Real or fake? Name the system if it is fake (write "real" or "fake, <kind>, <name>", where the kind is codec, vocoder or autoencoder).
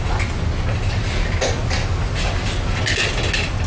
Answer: real